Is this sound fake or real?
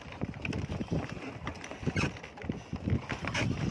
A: real